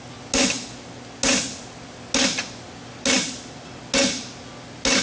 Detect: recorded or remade recorded